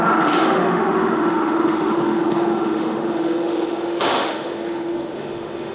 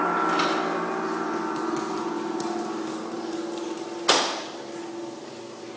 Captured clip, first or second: second